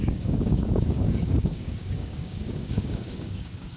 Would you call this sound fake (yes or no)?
yes